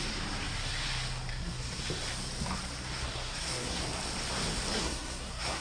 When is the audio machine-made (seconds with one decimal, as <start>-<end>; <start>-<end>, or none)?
1.3-1.8; 2.8-3.8; 4.7-5.6